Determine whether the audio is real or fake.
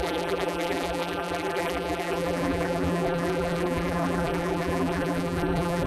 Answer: fake